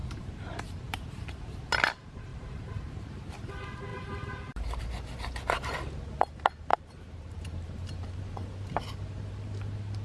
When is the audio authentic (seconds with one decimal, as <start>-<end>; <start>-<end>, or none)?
1.3-2.3; 3.3-3.9; 4.8-6.7; 8.2-10.0